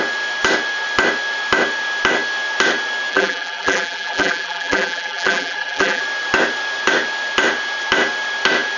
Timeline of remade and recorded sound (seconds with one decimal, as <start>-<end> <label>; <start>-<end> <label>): 0.0-3.1 recorded; 3.1-6.0 remade; 6.0-8.8 recorded